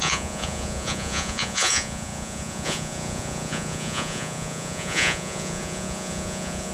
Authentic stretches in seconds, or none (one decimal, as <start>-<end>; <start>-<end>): none